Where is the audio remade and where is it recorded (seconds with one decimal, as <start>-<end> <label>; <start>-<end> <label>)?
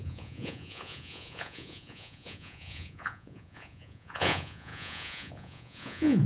0.0-6.3 remade